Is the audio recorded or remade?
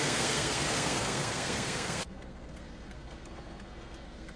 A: remade